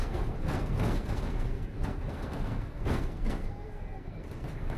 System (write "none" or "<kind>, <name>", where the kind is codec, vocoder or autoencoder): codec, SNAC